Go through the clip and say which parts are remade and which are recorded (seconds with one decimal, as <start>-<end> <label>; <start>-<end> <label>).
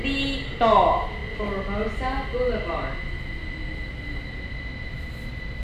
0.0-5.6 recorded